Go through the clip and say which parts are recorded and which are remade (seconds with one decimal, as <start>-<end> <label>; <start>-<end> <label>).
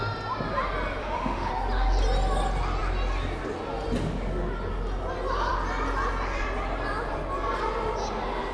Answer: 0.0-1.0 recorded; 1.0-1.5 remade; 1.5-8.5 recorded